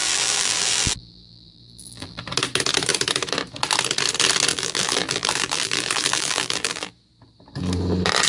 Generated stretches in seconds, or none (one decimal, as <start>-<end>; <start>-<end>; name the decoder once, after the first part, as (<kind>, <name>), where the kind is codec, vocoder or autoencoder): 0.0-2.2 (vocoder, BigVGAN v2); 4.5-6.9